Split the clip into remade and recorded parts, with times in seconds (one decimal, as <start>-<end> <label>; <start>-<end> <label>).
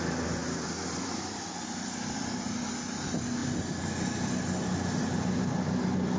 0.0-0.4 recorded; 0.4-2.4 remade; 2.4-3.4 recorded; 3.4-4.0 remade; 4.0-6.2 recorded